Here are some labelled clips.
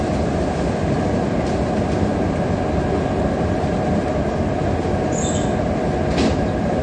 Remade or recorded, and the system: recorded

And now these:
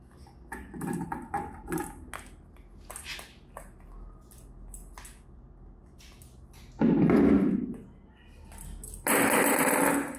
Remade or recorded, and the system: recorded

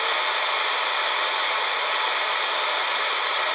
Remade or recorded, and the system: recorded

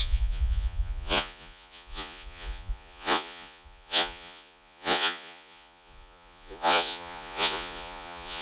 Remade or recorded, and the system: remade, vocoder, Vocos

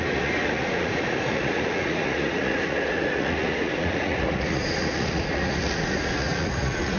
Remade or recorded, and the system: remade, vocoder, Vocos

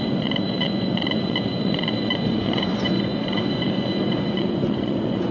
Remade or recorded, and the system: remade, vocoder, Vocos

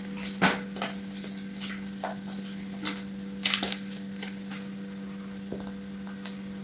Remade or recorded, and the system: recorded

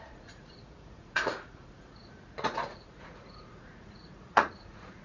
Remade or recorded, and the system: remade, vocoder, Vocos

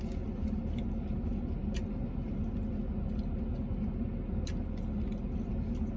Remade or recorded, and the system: recorded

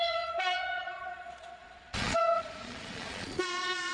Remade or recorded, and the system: remade, vocoder, Vocos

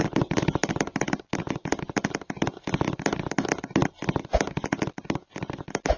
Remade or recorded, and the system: recorded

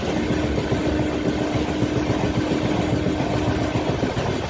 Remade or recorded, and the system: recorded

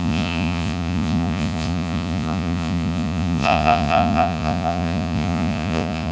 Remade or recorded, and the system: remade, vocoder, Vocos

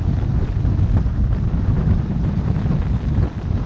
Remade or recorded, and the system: recorded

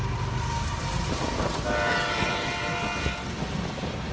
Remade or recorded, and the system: recorded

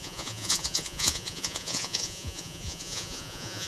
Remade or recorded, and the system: remade, vocoder, Vocos